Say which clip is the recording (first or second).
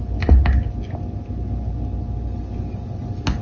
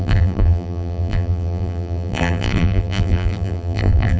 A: first